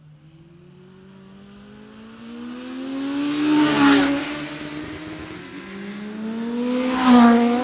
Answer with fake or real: real